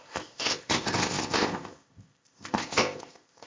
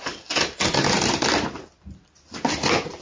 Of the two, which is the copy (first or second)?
first